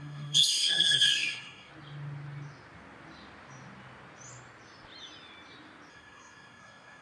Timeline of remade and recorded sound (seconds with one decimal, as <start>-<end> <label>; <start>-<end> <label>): 0.0-1.7 remade; 1.7-5.9 recorded; 5.9-7.0 remade